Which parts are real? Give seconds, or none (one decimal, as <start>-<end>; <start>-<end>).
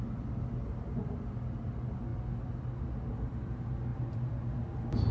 0.0-5.1